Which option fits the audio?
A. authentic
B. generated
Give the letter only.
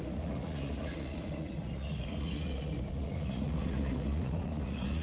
B